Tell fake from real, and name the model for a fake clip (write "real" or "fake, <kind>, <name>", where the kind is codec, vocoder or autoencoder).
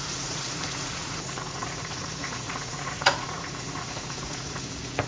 fake, vocoder, Vocos